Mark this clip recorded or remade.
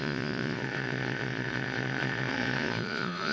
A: remade